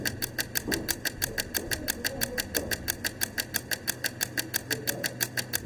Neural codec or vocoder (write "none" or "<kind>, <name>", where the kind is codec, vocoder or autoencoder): none